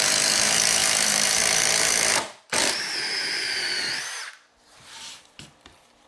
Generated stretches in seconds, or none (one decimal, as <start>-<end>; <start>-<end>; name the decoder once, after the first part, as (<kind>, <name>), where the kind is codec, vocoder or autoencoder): 0.0-6.1 (vocoder, BigVGAN v2)